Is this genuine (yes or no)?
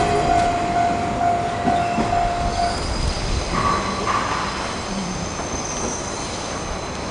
yes